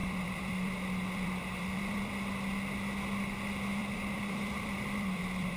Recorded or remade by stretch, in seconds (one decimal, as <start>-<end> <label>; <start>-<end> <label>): 0.0-2.1 remade; 2.1-3.8 recorded; 3.8-5.6 remade